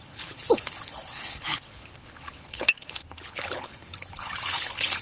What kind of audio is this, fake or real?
fake